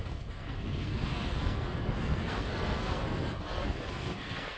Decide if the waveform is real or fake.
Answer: fake